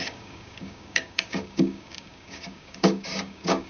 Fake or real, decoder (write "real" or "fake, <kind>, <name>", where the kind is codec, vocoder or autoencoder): fake, codec, DAC